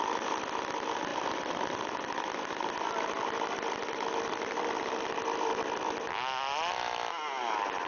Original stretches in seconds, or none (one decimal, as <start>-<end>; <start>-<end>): 0.0-1.1; 2.4-7.9